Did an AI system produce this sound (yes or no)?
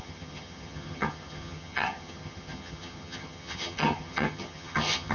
yes